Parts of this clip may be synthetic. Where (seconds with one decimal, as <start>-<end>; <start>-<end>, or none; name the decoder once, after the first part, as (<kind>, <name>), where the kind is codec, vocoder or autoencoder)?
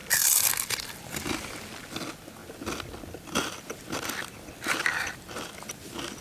none